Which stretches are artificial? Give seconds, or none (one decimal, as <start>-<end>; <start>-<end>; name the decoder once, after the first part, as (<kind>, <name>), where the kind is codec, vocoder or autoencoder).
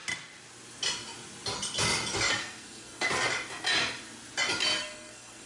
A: 2.4-3.1 (codec, SNAC); 4.8-5.5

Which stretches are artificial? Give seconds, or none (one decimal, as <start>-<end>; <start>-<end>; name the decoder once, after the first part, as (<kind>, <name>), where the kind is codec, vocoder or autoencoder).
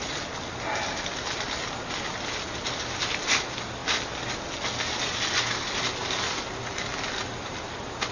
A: none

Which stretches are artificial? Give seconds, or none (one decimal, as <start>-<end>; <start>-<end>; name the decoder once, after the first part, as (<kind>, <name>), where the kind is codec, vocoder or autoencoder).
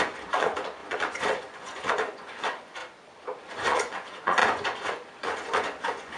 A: 0.0-2.8 (vocoder, Vocos); 3.4-6.2